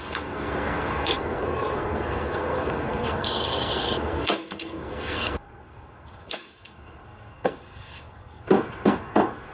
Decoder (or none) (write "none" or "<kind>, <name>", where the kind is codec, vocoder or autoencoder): codec, SNAC